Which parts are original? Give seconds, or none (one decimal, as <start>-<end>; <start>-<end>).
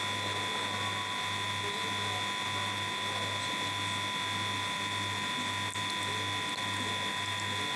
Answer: 0.0-7.8